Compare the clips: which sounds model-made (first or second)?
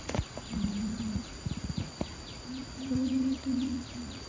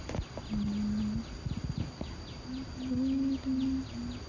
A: first